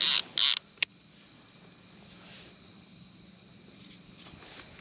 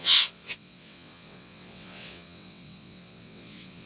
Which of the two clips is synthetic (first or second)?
second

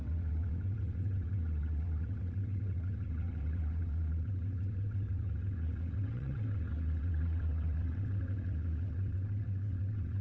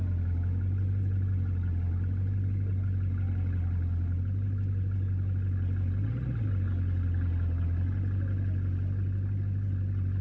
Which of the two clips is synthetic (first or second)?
first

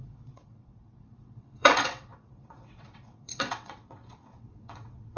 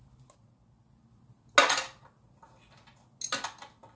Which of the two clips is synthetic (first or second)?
first